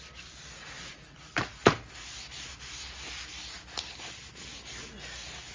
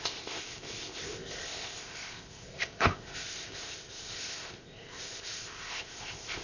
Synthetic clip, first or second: second